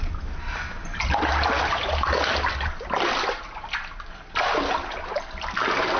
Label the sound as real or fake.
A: real